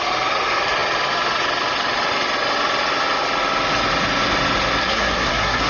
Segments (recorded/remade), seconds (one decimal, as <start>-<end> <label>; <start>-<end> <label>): 0.0-4.8 recorded; 4.8-5.7 remade